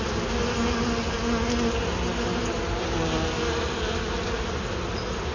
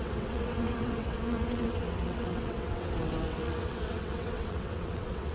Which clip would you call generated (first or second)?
second